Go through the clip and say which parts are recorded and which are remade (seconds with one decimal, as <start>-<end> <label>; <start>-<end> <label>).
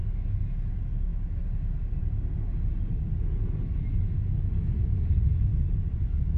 0.0-5.5 recorded; 5.5-6.4 remade